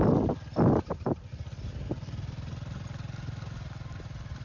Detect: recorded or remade recorded